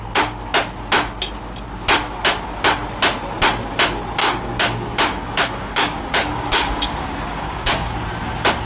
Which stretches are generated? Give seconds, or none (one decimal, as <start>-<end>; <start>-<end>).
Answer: 4.2-7.9

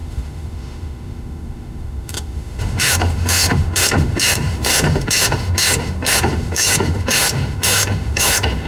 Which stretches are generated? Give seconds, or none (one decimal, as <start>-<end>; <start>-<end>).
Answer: 0.0-8.7

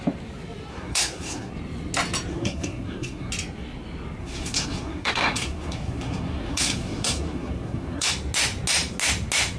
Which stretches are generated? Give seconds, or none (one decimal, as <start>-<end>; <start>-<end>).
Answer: 0.7-1.5; 2.3-3.3; 4.2-8.1

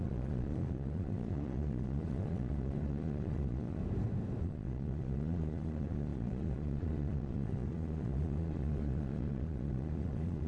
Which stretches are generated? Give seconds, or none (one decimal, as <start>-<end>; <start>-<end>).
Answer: 0.0-3.8; 4.4-10.5

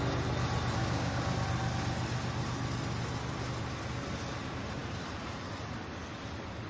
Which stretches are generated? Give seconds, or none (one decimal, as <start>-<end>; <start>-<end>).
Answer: 0.8-1.3

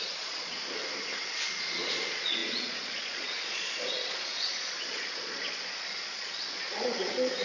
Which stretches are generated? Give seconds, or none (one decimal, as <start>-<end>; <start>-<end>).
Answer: 0.0-0.8; 1.3-7.4